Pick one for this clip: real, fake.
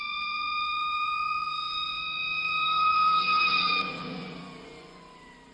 fake